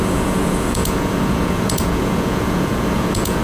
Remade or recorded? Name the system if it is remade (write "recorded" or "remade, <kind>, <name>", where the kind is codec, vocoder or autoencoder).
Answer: remade, vocoder, Vocos